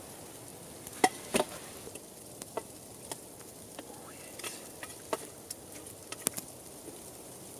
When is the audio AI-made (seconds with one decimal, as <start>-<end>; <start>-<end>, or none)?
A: 0.0-0.5; 2.0-3.5; 6.7-7.6